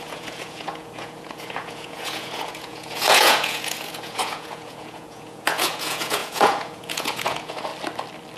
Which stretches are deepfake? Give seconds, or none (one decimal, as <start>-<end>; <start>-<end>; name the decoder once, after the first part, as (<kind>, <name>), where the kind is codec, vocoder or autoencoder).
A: 0.0-7.7 (vocoder, Vocos)